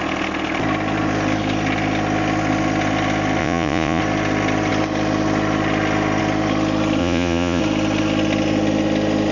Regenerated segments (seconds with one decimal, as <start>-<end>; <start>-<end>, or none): 3.4-4.0; 7.0-7.6

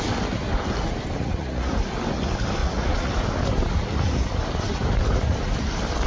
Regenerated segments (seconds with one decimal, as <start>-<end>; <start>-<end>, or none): 1.2-1.7; 2.6-3.1

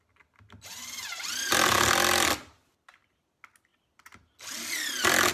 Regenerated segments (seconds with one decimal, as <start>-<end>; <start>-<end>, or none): none

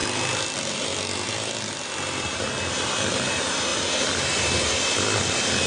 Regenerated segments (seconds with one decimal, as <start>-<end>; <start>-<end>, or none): none

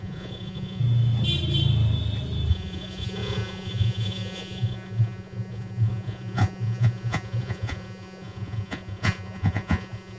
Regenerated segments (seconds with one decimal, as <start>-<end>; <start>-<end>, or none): 0.0-0.8; 2.5-10.2